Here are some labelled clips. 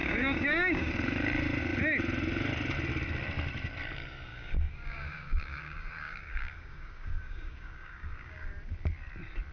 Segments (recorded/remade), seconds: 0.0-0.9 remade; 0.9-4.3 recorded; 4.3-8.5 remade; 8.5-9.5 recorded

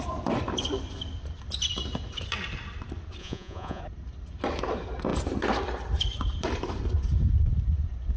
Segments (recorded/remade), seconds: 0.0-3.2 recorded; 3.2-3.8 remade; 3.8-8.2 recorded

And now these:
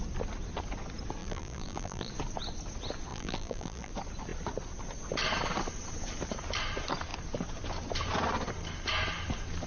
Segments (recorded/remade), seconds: 0.0-1.2 recorded; 1.2-2.1 remade; 2.1-3.1 recorded; 3.1-3.9 remade; 3.9-9.7 recorded